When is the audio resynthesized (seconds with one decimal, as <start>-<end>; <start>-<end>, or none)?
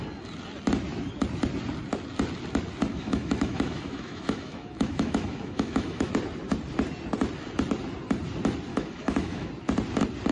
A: 2.9-6.1; 8.7-9.5